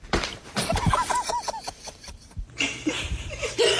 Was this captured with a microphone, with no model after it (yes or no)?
no